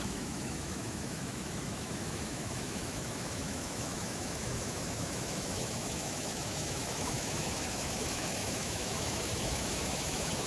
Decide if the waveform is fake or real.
fake